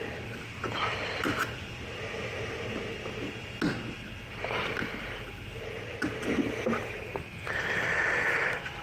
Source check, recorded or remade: recorded